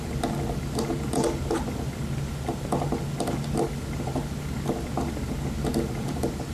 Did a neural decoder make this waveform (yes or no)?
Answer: no